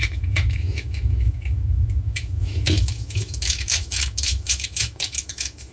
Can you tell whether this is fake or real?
fake